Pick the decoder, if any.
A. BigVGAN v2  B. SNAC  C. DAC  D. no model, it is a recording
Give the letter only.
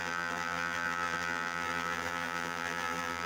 A